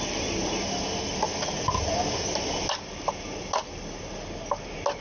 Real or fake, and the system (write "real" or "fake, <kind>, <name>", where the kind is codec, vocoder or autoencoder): real